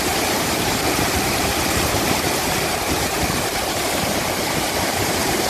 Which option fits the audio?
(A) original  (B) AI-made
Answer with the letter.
B